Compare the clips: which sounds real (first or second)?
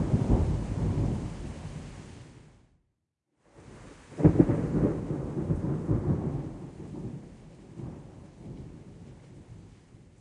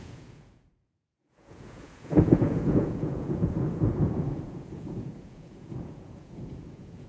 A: first